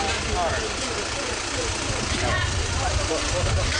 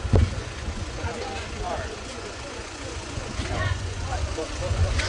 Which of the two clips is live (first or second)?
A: first